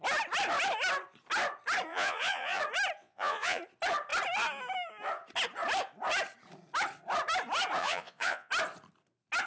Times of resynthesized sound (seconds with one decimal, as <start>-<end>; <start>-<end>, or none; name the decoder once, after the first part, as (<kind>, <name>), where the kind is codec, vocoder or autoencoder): 1.9-2.6 (vocoder, Vocos); 3.0-3.6; 7.8-8.5